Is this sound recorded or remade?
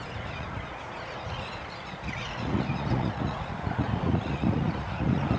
remade